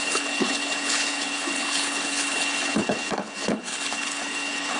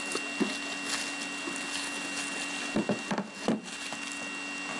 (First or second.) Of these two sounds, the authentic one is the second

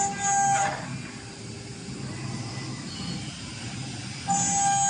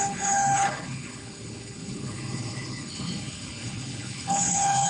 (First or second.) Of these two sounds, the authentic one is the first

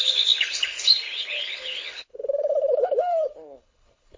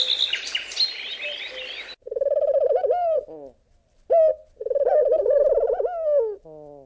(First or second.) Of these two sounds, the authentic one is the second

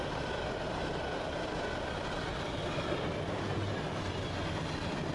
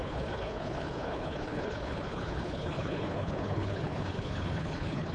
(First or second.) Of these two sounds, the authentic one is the first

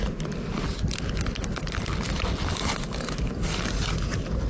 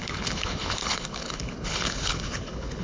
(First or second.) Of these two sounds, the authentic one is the first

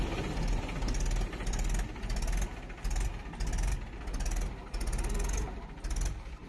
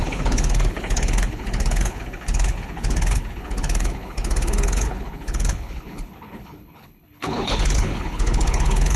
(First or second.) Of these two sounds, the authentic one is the first